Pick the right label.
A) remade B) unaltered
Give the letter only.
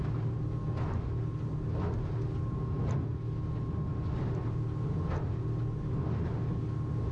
B